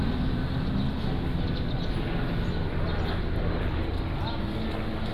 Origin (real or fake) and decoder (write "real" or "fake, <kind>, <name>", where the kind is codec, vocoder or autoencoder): real